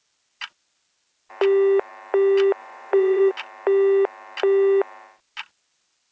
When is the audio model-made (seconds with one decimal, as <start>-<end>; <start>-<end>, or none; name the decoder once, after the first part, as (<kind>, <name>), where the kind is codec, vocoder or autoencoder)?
2.6-3.3 (vocoder, Vocos)